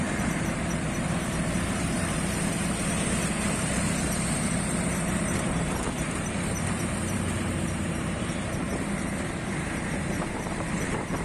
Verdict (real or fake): fake